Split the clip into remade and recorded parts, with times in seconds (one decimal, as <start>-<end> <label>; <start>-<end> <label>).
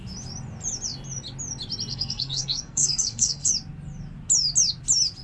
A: 0.0-1.9 recorded; 1.9-3.5 remade; 3.5-5.2 recorded